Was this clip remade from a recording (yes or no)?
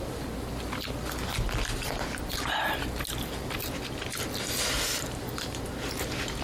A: no